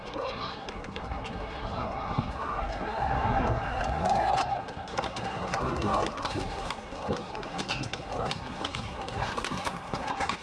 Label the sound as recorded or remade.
remade